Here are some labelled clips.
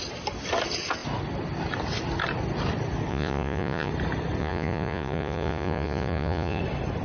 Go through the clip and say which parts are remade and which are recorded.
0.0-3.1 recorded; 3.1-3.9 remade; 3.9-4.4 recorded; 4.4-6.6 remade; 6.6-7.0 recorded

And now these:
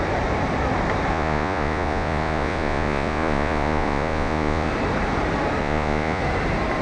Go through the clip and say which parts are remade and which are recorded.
0.0-1.1 recorded; 1.1-4.7 remade; 4.7-5.6 recorded; 5.6-6.2 remade; 6.2-6.8 recorded

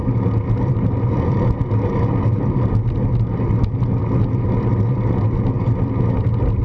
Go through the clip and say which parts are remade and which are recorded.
0.0-6.6 recorded

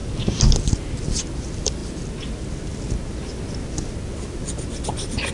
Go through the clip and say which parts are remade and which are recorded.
0.0-5.3 recorded

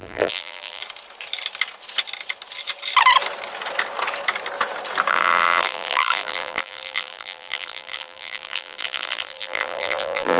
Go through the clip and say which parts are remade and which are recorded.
0.0-0.8 remade; 0.8-5.1 recorded; 5.1-10.4 remade

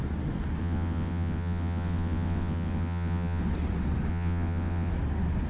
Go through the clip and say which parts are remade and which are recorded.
0.0-0.6 recorded; 0.6-3.4 remade; 3.4-4.1 recorded; 4.1-4.9 remade; 4.9-5.5 recorded